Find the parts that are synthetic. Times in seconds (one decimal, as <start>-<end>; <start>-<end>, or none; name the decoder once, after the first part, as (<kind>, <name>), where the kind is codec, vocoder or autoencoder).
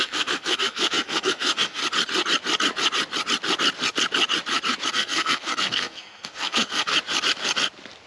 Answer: 0.0-1.8 (codec, SNAC); 4.9-6.9